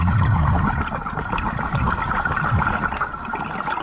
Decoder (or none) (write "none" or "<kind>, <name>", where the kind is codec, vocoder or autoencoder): none